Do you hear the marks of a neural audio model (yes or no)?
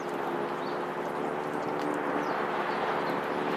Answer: no